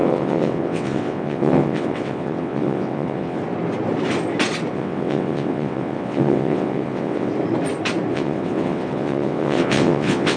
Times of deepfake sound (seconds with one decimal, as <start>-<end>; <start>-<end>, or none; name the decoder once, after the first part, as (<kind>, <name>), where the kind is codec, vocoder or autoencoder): 0.0-3.4 (vocoder, WaveNeXt); 4.7-7.3; 8.1-10.4